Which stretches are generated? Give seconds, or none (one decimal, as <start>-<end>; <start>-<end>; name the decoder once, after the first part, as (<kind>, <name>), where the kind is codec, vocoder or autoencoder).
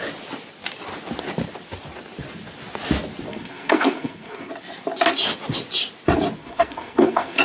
3.3-4.5 (codec, SNAC); 6.4-7.4